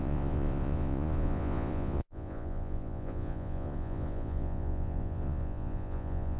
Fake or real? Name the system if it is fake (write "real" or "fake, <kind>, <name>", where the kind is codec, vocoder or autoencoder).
fake, vocoder, Vocos